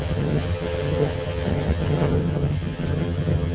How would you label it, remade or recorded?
remade